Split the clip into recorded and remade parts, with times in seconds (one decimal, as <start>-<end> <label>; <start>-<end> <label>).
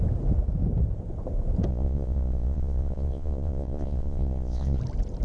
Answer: 0.0-1.7 recorded; 1.7-4.8 remade; 4.8-5.2 recorded